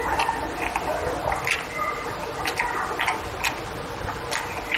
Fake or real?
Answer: real